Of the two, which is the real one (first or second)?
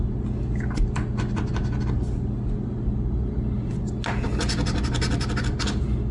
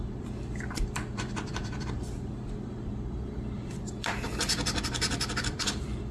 first